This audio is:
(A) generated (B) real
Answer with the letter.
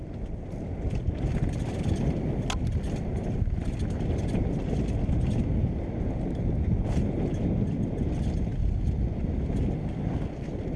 B